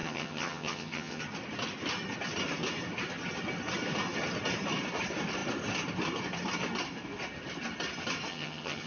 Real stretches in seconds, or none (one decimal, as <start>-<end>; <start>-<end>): 1.2-8.3